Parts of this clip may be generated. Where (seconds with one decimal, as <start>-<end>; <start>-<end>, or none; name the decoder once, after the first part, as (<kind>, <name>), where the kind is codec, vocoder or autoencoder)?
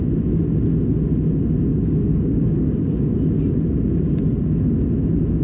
1.7-3.1 (codec, DAC)